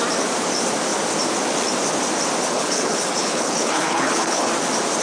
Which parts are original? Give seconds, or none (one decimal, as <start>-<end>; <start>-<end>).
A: 0.0-2.5; 4.5-5.0